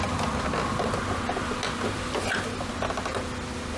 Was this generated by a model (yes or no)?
no